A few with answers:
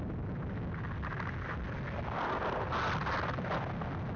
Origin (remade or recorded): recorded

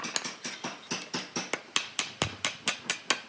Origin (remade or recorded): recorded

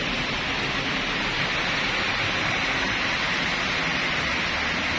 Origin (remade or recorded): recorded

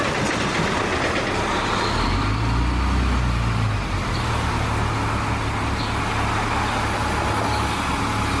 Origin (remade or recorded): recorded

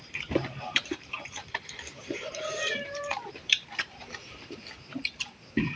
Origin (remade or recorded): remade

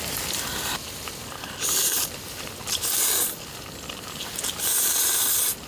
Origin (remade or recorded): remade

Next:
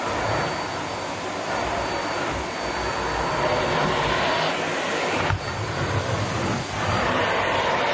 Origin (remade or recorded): recorded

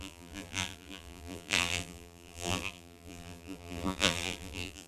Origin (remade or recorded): remade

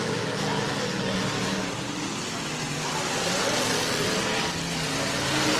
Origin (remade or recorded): recorded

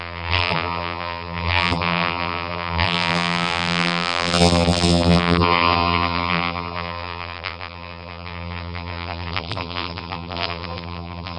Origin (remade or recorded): remade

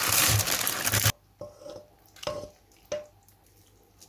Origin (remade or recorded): recorded